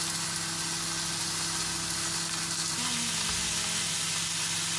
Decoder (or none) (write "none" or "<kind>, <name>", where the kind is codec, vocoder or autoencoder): none